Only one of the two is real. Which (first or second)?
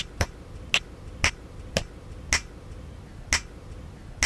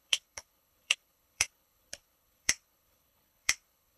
first